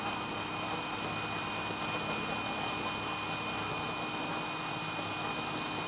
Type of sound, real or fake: real